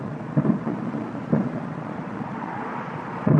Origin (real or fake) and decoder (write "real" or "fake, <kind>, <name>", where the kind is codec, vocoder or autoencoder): fake, vocoder, Vocos